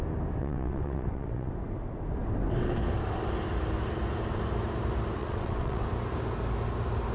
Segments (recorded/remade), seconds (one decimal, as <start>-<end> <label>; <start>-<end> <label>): 0.0-0.4 recorded; 0.4-1.5 remade; 1.5-5.2 recorded; 5.2-5.8 remade; 5.8-7.1 recorded